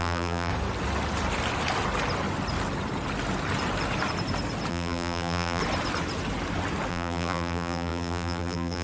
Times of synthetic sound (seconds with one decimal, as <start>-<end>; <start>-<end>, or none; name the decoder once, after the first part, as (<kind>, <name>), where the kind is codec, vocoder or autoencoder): 0.0-0.5 (vocoder, BigVGAN v2); 4.7-5.6; 6.9-8.8